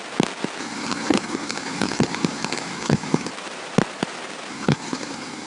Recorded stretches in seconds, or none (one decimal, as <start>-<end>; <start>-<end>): 0.0-0.6; 3.3-4.5